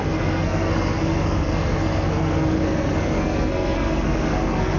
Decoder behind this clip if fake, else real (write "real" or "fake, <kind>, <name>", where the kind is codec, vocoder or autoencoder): fake, codec, SNAC